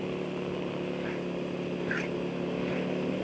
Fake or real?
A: real